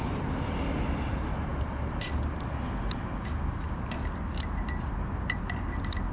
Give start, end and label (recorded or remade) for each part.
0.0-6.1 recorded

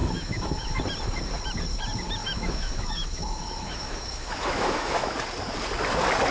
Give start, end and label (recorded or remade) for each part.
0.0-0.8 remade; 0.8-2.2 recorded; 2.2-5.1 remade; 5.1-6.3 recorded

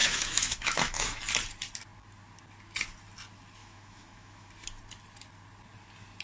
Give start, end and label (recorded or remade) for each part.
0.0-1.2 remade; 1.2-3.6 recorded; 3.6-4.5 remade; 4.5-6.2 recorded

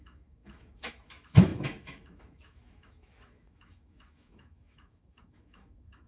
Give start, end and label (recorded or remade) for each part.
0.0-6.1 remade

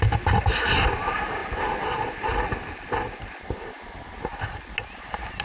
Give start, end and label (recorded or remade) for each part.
0.0-5.4 recorded

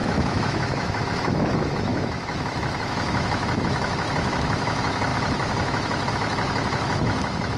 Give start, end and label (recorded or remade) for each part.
0.0-7.6 remade